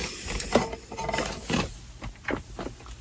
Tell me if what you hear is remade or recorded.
recorded